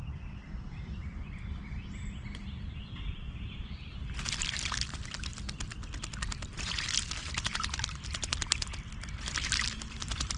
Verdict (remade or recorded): remade